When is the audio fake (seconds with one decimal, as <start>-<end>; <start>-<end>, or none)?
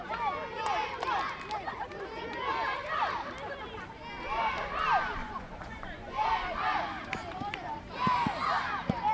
5.2-6.3